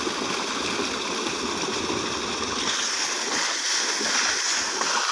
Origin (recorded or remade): recorded